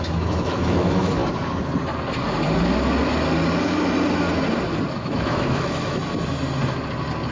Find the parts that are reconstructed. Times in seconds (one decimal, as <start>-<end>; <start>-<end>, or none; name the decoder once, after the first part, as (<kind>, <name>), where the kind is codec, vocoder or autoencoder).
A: 0.0-1.2 (autoencoder, DAC-VAE); 4.9-6.0